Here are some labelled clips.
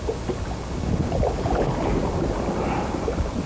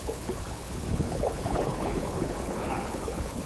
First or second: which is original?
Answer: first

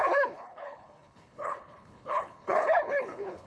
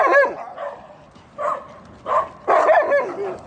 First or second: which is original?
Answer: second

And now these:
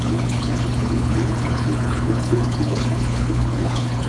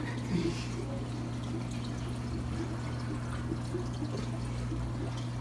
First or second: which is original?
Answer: second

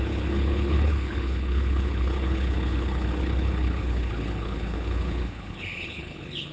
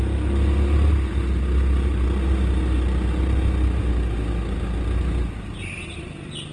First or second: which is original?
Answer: second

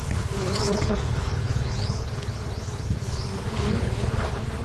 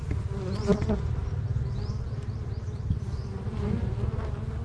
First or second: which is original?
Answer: second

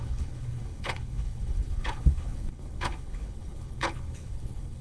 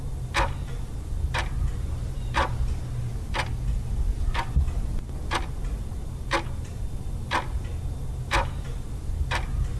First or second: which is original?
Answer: second